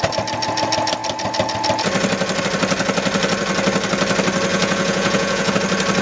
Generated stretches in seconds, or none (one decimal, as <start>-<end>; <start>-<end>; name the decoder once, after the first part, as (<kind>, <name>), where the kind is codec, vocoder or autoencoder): 4.5-5.5 (vocoder, Vocos)